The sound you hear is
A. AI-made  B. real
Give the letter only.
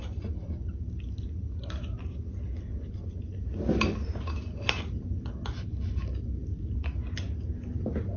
B